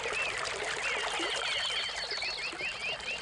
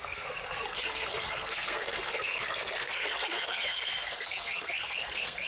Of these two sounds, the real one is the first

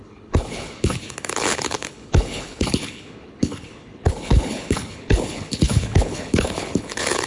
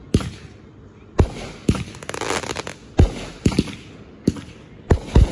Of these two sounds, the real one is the second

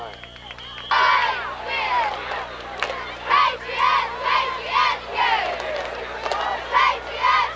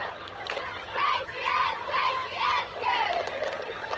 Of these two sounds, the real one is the first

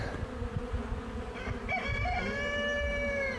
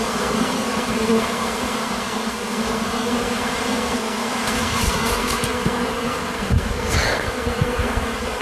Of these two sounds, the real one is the first